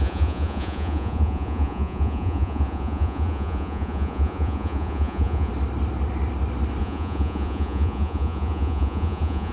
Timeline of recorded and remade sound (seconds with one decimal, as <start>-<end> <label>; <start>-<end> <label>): 0.0-5.5 remade; 5.5-6.8 recorded; 6.8-9.5 remade